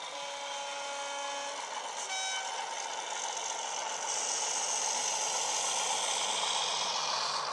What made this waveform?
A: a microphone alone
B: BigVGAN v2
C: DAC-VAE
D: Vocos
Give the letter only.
A